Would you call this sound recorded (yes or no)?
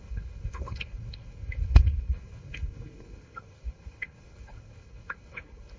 no